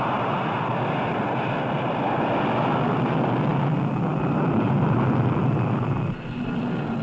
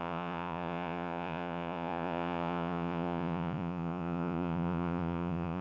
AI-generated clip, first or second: second